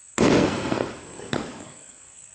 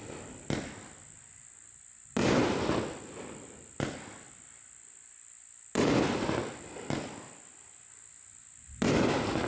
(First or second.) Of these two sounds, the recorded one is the second